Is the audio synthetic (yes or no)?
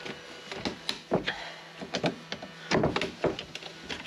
no